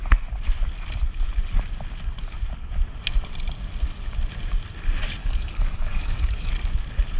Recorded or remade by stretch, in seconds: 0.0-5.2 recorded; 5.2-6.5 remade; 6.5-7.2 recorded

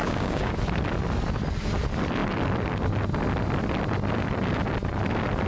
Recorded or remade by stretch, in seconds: 0.0-0.5 remade; 0.5-5.5 recorded